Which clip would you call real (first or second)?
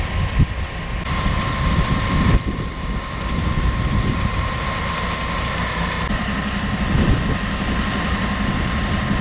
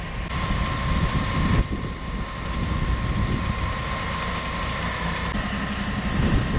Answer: second